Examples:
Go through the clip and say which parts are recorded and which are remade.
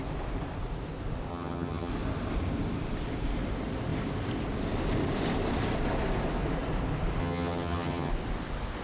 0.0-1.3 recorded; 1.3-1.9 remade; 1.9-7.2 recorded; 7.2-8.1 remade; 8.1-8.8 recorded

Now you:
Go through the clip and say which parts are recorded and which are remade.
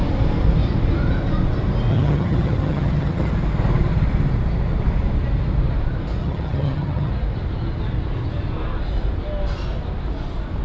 0.0-1.9 recorded; 1.9-3.3 remade; 3.3-6.2 recorded; 6.2-7.1 remade; 7.1-10.6 recorded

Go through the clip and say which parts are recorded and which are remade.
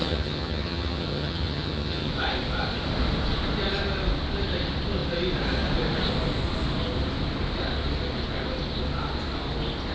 0.0-2.1 remade; 2.1-9.9 recorded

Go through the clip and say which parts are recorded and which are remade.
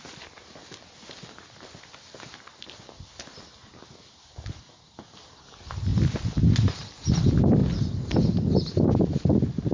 0.0-9.7 recorded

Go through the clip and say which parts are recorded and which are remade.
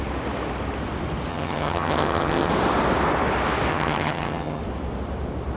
0.0-1.3 recorded; 1.3-2.5 remade; 2.5-3.7 recorded; 3.7-4.6 remade; 4.6-5.6 recorded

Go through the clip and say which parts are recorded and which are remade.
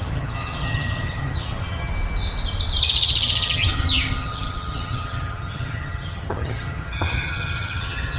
0.0-1.9 remade; 1.9-2.8 recorded; 2.8-8.2 remade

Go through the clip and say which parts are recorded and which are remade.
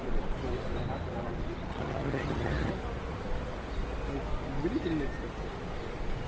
0.0-1.7 recorded; 1.7-2.7 remade; 2.7-6.3 recorded